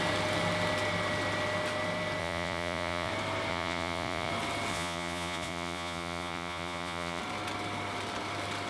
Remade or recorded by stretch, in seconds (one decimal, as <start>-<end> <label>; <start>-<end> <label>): 0.0-2.2 recorded; 2.2-3.1 remade; 3.1-3.5 recorded; 3.5-4.3 remade; 4.3-4.7 recorded; 4.7-7.2 remade; 7.2-8.7 recorded